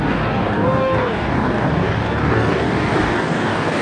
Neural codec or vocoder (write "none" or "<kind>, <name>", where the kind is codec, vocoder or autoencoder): codec, DAC